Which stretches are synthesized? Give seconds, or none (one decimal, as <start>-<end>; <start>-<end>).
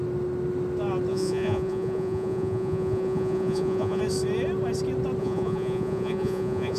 1.1-4.0; 5.2-6.8